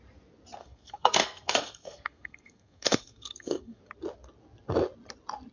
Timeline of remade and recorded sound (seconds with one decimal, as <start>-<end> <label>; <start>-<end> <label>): 0.0-0.6 recorded; 0.6-3.8 remade; 3.8-5.5 recorded